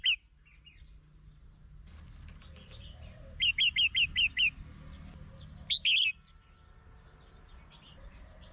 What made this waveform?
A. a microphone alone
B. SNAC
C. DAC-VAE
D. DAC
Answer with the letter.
A